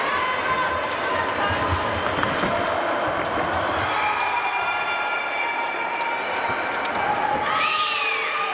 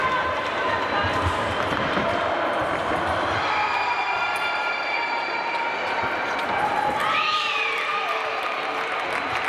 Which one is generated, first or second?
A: second